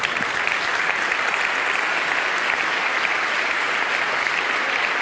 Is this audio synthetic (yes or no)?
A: no